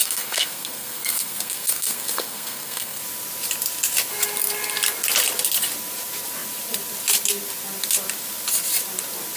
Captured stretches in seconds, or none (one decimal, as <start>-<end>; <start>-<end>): 3.0-9.4